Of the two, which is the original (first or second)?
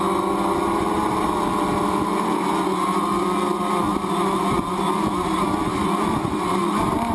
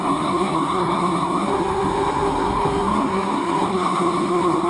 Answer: first